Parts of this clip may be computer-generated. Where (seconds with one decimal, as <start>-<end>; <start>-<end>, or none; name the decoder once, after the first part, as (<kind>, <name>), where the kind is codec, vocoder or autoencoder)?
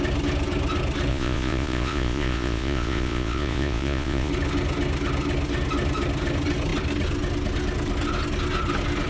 1.1-4.3 (vocoder, Vocos)